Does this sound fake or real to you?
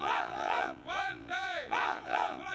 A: fake